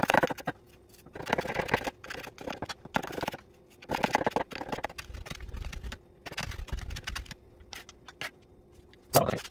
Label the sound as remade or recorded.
recorded